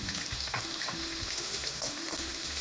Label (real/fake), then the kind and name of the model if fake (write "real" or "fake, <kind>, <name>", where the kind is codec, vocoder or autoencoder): fake, autoencoder, DAC-VAE